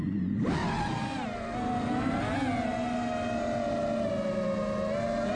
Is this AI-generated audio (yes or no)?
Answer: no